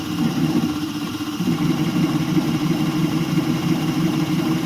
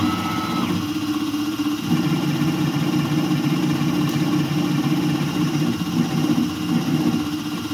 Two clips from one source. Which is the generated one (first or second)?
first